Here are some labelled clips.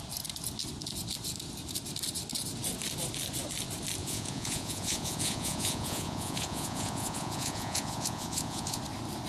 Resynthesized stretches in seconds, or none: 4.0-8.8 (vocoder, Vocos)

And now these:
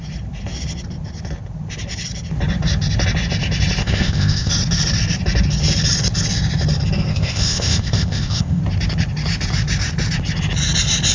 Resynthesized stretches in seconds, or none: 3.8-4.5 (codec, ZipCodec); 7.1-8.6